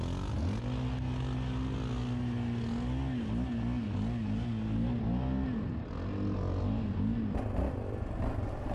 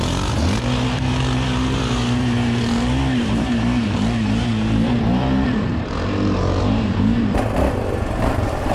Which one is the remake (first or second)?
second